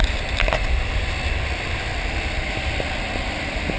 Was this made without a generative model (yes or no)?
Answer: no